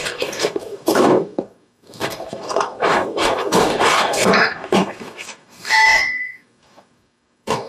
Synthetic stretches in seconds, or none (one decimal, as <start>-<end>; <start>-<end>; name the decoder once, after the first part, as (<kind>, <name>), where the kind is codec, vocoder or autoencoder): 0.0-7.7 (codec, DAC)